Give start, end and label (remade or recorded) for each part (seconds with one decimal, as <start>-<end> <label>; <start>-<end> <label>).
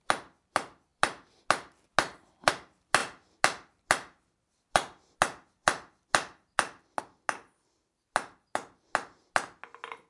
0.0-10.1 recorded